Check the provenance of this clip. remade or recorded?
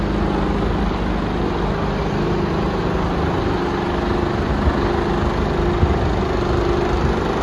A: recorded